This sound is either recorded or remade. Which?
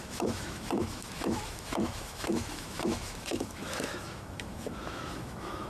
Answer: remade